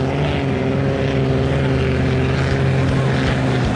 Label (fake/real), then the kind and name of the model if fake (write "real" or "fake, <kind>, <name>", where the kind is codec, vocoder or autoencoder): real